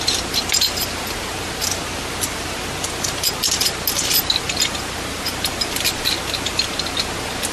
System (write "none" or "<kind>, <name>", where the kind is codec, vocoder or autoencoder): none